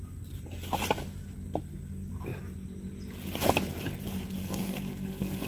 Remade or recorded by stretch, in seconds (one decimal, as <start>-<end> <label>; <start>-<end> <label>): 0.0-4.4 recorded; 4.4-5.5 remade